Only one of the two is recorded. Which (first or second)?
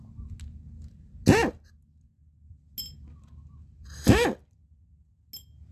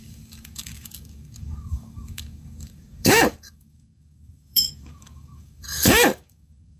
first